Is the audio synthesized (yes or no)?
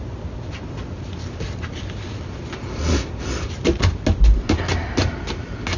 no